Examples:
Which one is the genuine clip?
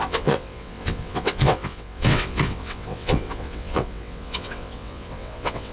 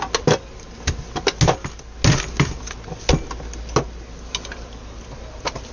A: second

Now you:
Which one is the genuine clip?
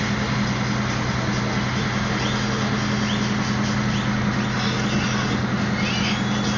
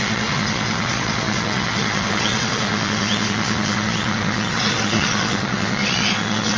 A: first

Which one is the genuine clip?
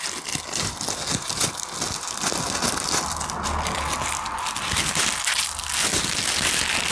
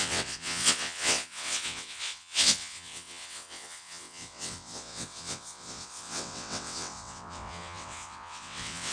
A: first